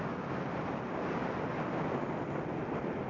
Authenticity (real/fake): real